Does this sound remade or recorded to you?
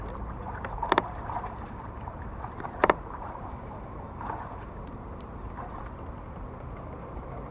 remade